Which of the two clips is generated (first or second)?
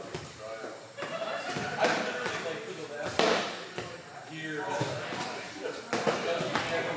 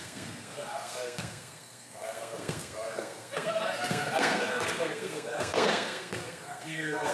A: second